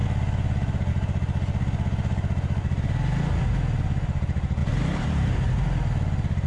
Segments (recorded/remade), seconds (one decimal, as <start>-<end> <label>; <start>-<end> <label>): 0.0-4.6 recorded; 4.6-5.3 remade; 5.3-6.5 recorded